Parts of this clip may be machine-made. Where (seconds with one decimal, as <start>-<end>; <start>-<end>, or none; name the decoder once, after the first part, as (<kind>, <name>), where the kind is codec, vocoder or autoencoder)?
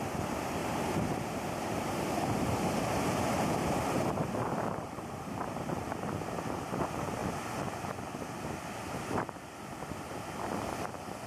0.6-5.7 (vocoder, BigVGAN v2)